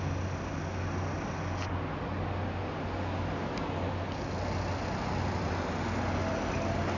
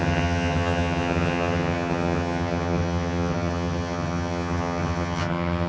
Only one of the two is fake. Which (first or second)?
second